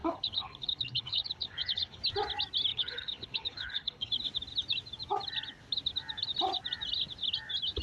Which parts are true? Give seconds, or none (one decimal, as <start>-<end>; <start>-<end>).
2.0-2.7; 4.1-7.8